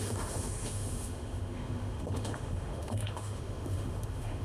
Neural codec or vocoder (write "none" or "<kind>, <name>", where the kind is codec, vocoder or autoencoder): autoencoder, DAC-VAE